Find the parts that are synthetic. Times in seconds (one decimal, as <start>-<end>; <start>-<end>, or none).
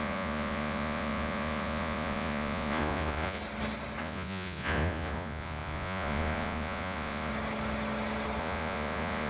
0.0-3.4; 4.0-7.3; 8.4-9.3